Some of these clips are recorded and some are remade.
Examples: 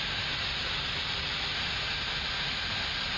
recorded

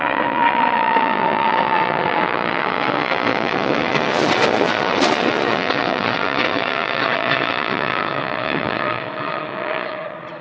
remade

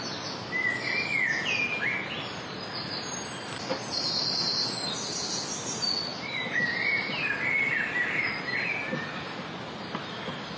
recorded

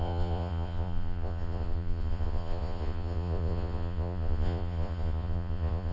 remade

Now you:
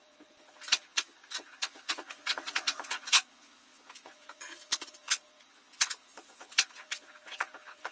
remade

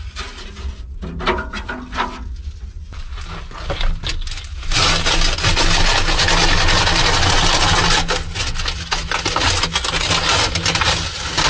recorded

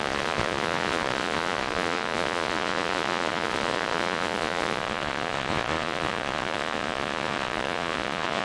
remade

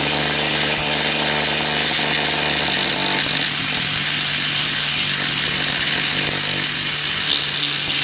recorded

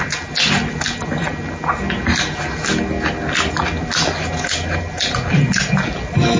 recorded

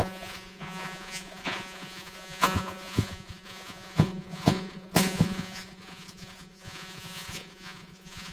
remade